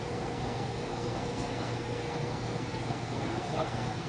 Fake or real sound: fake